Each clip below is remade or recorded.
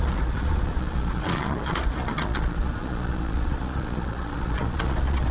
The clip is remade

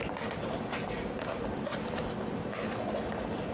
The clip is recorded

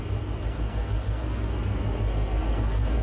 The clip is remade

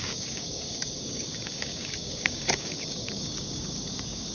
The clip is remade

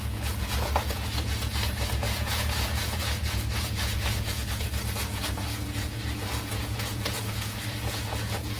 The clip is remade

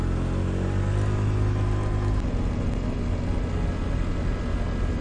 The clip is recorded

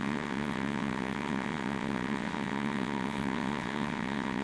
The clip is remade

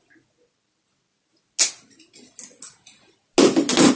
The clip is recorded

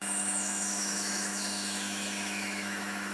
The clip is remade